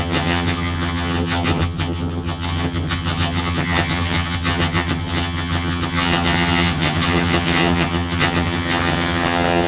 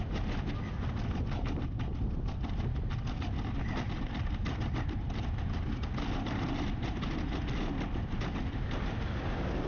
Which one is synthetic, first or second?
first